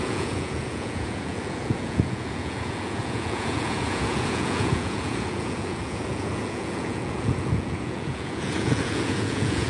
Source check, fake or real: fake